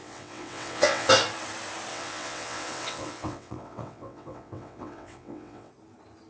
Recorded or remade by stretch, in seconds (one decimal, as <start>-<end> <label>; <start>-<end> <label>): 0.0-1.1 remade; 1.1-1.9 recorded; 1.9-5.7 remade; 5.7-6.3 recorded